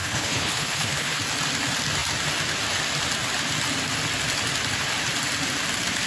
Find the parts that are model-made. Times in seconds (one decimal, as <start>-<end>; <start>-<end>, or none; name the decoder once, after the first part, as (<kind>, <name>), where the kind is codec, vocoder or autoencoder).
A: 0.0-1.2 (codec, HILCodec)